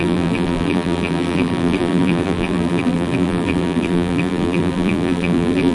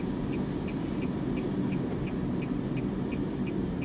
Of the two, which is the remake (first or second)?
first